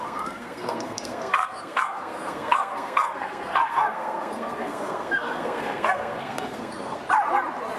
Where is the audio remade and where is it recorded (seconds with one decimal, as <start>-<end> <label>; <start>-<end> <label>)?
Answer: 0.0-7.0 remade; 7.0-7.8 recorded